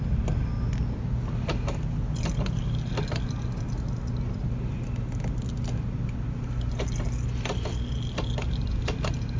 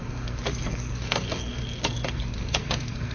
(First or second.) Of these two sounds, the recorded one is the first